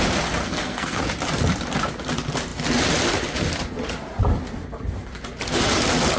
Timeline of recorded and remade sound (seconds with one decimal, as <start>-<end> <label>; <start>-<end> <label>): 0.0-0.4 recorded; 0.4-1.0 remade; 1.0-6.2 recorded